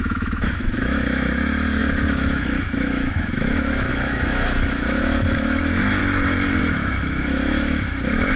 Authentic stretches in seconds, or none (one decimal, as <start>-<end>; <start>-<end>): 6.0-6.6